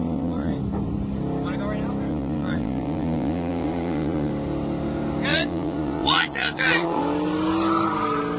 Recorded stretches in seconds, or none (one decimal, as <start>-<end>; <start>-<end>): 0.5-2.1; 4.3-5.3; 7.0-8.4